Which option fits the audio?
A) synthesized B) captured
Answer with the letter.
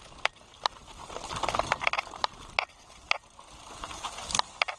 B